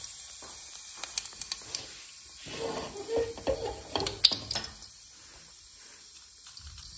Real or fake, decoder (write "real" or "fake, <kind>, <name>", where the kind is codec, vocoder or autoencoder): real